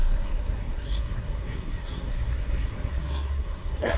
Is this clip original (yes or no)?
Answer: no